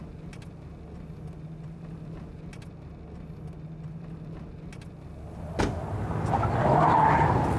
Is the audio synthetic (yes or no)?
no